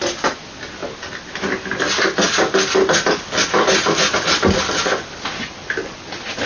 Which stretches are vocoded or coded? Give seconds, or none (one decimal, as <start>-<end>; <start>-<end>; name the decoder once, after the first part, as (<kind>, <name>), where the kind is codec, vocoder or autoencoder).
none